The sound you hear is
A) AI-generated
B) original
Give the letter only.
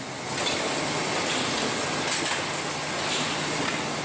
B